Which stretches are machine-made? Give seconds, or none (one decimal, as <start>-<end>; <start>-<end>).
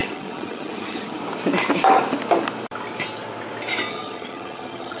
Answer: 0.0-1.2; 3.9-5.0